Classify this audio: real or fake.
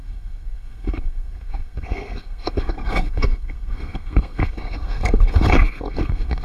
fake